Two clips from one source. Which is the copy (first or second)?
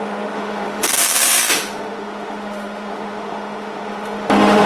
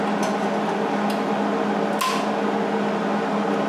first